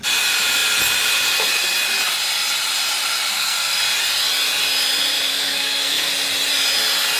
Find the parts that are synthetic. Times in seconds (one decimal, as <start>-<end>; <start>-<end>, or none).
3.3-3.8; 5.3-6.1